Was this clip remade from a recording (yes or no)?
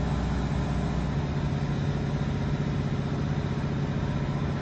no